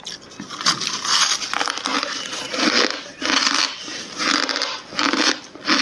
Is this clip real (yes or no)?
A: yes